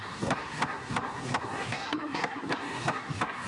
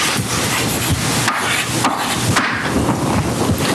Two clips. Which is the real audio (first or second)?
second